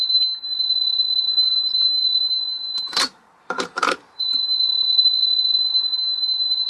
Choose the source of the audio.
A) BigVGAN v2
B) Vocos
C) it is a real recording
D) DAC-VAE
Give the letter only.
A